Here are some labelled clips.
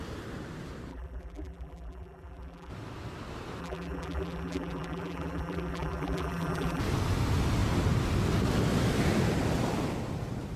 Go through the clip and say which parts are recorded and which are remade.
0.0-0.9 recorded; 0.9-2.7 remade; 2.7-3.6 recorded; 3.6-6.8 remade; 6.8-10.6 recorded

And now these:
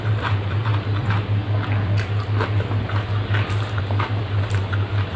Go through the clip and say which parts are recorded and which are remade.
0.0-0.7 remade; 0.7-3.8 recorded; 3.8-5.2 remade

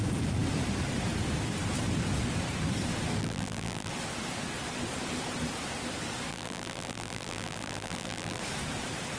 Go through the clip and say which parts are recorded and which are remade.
0.0-3.2 recorded; 3.2-3.9 remade; 3.9-6.3 recorded; 6.3-8.4 remade; 8.4-9.2 recorded

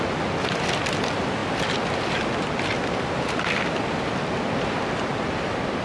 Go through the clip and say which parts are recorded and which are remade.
0.0-5.8 recorded

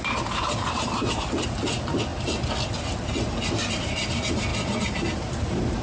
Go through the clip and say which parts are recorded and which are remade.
0.0-2.1 remade; 2.1-3.7 recorded; 3.7-4.5 remade; 4.5-5.3 recorded; 5.3-5.8 remade

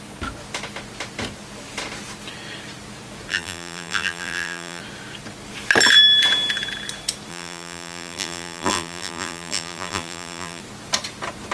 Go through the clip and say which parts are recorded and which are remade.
0.0-3.3 recorded; 3.3-4.8 remade; 4.8-7.3 recorded; 7.3-10.6 remade; 10.6-11.5 recorded

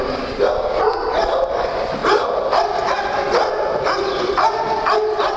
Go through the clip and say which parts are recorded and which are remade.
0.0-5.4 recorded